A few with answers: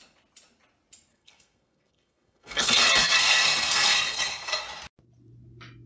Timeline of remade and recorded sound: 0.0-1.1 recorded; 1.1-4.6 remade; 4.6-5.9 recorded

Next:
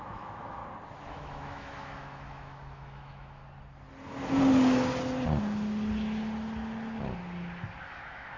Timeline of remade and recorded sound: 0.0-0.6 remade; 0.6-1.1 recorded; 1.1-3.4 remade; 3.4-7.8 recorded; 7.8-8.4 remade

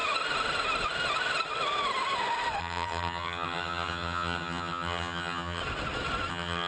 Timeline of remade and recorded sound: 0.0-2.6 recorded; 2.6-5.6 remade; 5.6-6.3 recorded; 6.3-6.7 remade